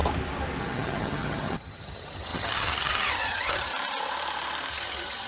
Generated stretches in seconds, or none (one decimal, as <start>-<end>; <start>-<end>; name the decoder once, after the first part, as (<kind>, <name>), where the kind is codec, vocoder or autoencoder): 0.6-3.7 (vocoder, HiFi-GAN); 4.7-5.3

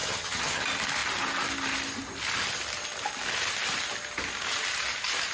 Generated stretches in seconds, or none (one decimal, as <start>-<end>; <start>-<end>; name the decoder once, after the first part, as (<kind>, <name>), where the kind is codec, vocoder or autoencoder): 0.0-0.6 (vocoder, HiFi-GAN)

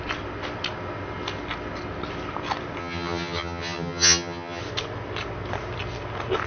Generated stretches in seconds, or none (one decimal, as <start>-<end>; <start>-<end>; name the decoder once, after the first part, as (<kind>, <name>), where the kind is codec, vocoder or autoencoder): 2.8-4.6 (vocoder, HiFi-GAN)

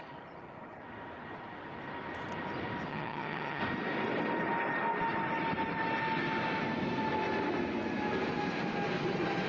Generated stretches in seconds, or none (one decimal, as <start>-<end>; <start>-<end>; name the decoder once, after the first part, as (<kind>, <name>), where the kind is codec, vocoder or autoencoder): 2.9-3.6 (vocoder, HiFi-GAN)

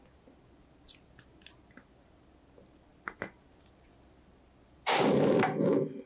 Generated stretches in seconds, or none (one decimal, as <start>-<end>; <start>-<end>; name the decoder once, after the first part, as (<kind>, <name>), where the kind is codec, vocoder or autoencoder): none

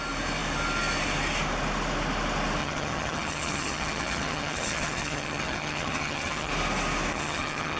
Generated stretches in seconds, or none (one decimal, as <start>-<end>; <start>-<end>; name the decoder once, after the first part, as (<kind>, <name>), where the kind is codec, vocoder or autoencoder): 2.6-6.5 (vocoder, HiFi-GAN); 7.1-7.8